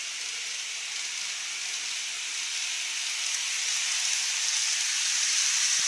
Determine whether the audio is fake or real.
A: real